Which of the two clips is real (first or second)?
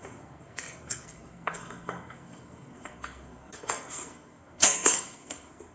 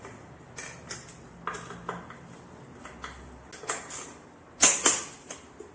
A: second